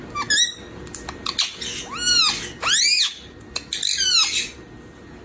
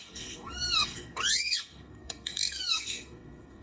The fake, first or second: second